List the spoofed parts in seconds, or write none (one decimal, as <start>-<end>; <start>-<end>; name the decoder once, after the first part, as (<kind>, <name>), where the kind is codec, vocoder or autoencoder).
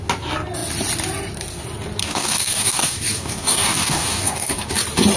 2.0-4.7 (codec, DAC)